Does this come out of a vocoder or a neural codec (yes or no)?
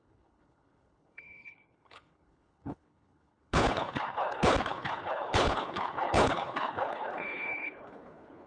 yes